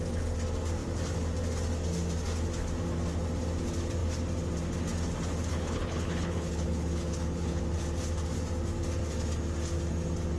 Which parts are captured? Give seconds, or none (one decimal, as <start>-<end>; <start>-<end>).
0.0-5.5; 7.6-10.4